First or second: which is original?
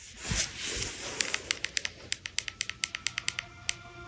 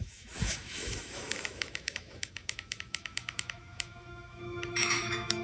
first